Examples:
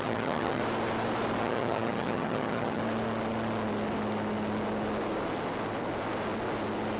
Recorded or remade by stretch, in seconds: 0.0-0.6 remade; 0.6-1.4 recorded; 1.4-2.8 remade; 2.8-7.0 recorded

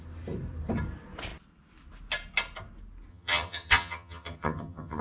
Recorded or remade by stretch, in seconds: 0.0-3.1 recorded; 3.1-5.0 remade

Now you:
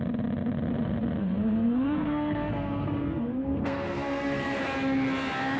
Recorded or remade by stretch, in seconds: 0.0-1.2 recorded; 1.2-4.6 remade; 4.6-5.6 recorded